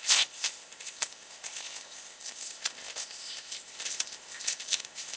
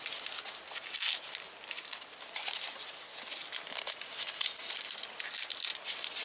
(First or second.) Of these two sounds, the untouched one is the second